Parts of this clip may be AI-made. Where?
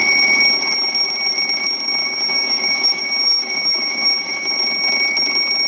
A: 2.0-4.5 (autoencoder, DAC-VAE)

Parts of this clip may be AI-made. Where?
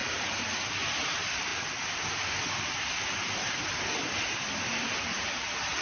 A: 1.5-5.0 (vocoder, BigVGAN v2)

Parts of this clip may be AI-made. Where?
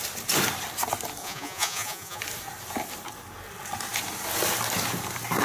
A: 1.2-2.2 (vocoder, Vocos)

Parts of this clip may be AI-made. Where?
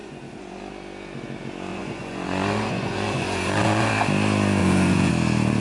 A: 0.0-0.6 (vocoder, Vocos); 1.7-3.9; 4.6-5.1